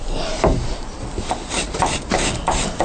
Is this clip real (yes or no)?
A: no